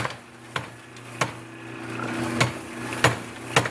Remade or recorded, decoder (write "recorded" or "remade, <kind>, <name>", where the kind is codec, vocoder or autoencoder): recorded